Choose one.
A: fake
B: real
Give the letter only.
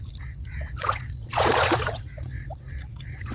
A